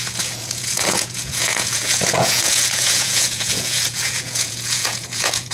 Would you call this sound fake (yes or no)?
yes